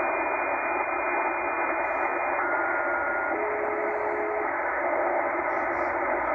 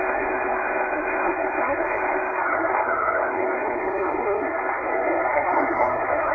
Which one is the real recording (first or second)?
first